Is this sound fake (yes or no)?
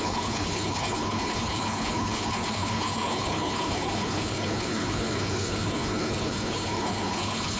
yes